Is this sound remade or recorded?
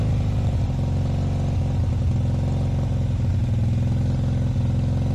recorded